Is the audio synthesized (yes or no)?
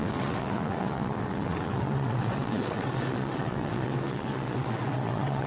yes